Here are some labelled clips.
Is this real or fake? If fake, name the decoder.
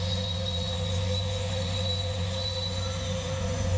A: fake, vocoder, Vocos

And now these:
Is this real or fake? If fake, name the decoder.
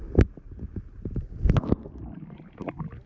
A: real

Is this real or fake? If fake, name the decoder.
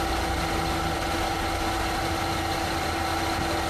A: real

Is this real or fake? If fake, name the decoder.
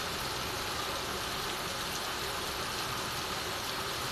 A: real